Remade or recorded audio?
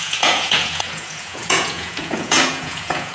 remade